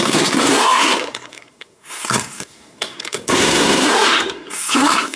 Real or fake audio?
fake